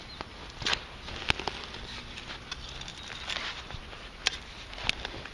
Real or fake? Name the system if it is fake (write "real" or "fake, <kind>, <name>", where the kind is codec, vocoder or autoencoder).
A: real